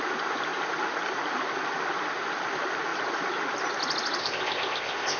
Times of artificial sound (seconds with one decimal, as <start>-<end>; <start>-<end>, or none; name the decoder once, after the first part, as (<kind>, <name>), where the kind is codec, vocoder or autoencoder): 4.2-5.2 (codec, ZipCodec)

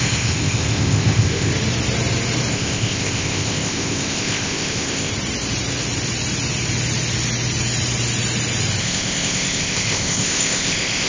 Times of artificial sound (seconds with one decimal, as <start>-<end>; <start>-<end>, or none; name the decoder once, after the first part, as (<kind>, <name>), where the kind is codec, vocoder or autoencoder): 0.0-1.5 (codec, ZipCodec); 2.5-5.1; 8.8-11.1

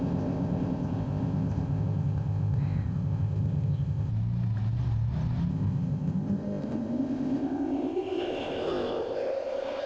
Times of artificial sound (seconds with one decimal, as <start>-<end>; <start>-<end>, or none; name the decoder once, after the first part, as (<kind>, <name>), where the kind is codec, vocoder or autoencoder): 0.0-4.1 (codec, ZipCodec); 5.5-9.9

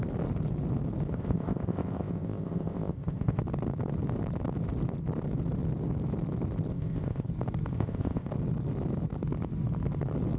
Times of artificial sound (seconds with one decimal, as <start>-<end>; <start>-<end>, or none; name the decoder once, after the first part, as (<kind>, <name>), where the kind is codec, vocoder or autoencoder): 1.1-3.4 (codec, ZipCodec); 6.7-7.3; 7.7-8.3